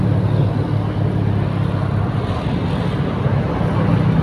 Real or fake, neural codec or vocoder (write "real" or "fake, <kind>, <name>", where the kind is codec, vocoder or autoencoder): real